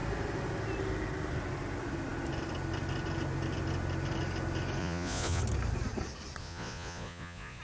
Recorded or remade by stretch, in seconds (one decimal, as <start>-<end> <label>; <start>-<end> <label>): 0.0-4.8 recorded; 4.8-5.4 remade; 5.4-6.4 recorded; 6.4-7.6 remade